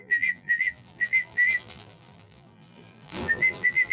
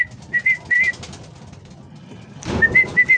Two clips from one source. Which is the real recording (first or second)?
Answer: second